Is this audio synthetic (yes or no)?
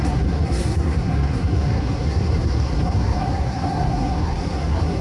yes